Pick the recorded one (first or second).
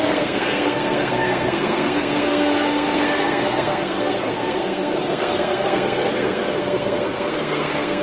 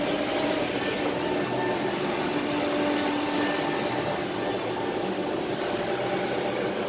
second